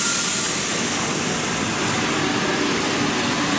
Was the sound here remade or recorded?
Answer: recorded